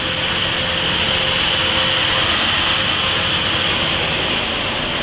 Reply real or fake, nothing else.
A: real